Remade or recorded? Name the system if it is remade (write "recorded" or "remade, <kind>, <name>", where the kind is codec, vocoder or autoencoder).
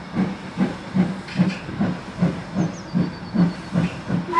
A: recorded